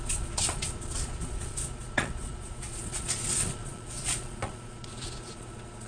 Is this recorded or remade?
remade